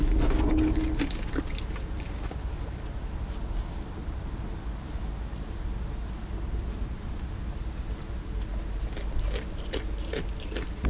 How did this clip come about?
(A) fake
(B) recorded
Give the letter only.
B